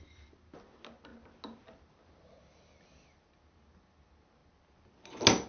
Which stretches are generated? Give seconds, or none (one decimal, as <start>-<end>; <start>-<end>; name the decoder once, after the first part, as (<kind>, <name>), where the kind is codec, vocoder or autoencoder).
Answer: none